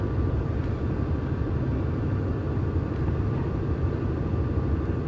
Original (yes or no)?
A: yes